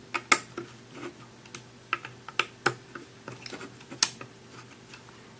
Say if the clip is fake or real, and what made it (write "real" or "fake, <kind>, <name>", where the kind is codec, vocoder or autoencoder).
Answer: real